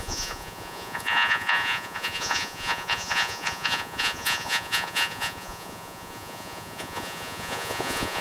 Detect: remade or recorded remade